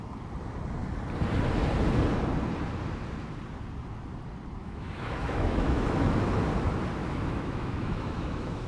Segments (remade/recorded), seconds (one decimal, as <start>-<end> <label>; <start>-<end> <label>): 0.0-4.6 recorded; 4.6-6.3 remade; 6.3-7.0 recorded; 7.0-8.7 remade